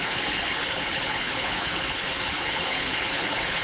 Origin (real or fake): fake